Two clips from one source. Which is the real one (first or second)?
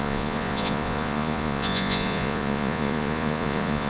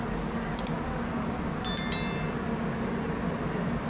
second